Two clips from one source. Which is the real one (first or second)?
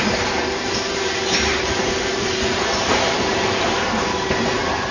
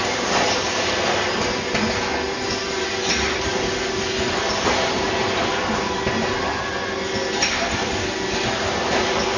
second